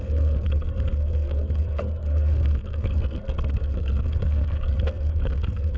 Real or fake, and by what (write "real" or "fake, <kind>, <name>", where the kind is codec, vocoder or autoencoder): fake, codec, SNAC